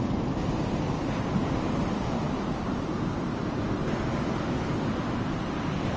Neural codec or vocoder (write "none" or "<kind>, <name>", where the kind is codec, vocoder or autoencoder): none